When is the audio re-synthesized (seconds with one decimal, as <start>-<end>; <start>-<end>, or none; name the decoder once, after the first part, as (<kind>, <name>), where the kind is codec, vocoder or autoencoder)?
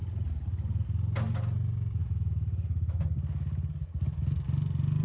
2.0-3.0 (autoencoder, DAC-VAE)